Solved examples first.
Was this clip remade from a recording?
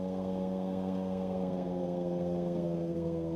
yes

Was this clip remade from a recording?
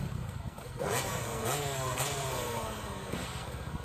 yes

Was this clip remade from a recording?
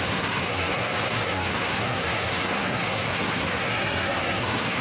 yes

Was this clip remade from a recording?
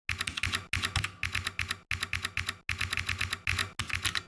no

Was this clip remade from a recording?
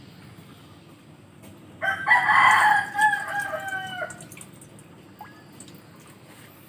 no